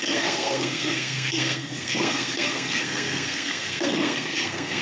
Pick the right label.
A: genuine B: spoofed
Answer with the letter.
B